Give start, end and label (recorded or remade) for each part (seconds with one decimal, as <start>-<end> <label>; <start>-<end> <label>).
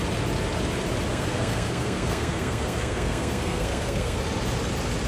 0.0-1.1 recorded; 1.1-4.2 remade; 4.2-5.1 recorded